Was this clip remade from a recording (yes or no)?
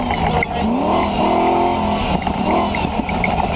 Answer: no